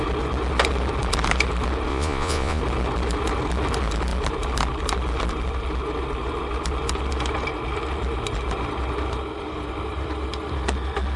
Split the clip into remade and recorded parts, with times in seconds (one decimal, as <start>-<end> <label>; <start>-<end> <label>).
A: 0.0-1.9 recorded; 1.9-2.6 remade; 2.6-11.2 recorded